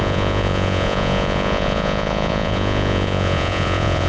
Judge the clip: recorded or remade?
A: remade